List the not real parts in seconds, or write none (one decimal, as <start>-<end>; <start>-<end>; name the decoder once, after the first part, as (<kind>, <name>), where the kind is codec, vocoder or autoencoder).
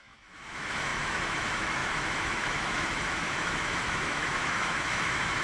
0.0-5.4 (autoencoder, DAC-VAE)